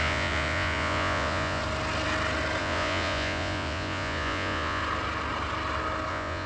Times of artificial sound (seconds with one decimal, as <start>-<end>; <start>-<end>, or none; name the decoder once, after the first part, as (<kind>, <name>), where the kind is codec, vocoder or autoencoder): 0.0-1.6 (vocoder, Vocos); 2.6-4.8; 6.1-6.5